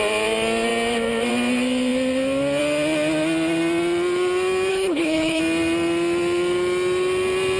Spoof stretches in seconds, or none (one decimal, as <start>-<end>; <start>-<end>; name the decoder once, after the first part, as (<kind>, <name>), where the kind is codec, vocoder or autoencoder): 4.7-5.4 (codec, HILCodec)